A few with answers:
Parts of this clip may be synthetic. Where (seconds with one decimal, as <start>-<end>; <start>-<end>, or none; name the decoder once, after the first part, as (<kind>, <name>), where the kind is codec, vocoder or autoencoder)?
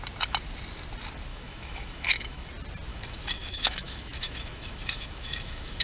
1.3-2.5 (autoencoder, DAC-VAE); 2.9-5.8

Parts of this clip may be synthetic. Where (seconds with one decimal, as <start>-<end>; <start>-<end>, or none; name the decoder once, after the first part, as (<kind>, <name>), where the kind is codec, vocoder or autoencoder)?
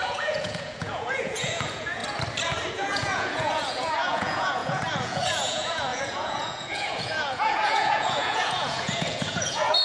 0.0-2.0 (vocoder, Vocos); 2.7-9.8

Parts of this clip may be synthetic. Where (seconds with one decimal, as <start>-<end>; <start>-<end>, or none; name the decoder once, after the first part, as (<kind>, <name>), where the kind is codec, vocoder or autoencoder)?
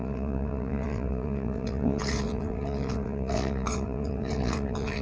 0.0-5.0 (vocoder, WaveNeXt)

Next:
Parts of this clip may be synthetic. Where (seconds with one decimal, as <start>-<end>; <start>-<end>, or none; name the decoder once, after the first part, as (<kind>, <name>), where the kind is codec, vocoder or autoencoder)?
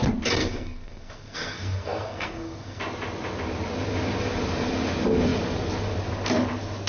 0.4-2.8 (codec, SNAC)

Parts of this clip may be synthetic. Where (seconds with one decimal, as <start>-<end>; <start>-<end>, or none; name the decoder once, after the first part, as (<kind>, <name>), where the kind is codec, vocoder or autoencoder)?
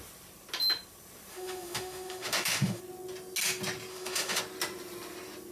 1.3-2.8 (autoencoder, DAC-VAE); 3.9-4.4